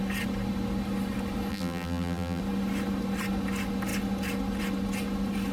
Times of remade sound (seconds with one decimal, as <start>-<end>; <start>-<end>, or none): 1.5-2.4